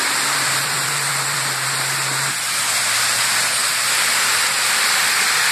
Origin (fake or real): fake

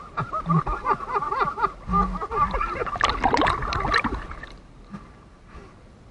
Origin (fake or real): real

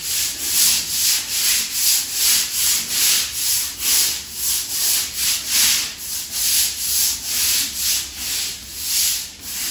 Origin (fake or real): real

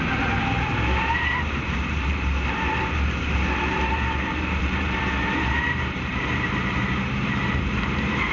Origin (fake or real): fake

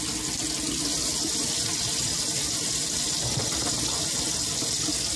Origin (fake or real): real